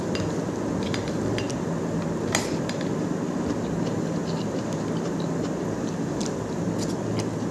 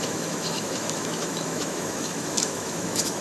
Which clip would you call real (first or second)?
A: first